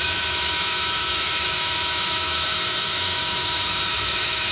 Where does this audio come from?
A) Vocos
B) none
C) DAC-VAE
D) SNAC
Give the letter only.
C